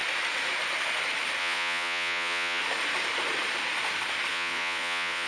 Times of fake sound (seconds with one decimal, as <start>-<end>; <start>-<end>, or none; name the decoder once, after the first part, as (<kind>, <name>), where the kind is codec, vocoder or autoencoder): 1.4-2.6 (vocoder, Vocos); 4.3-5.3